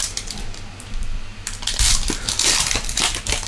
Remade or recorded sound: remade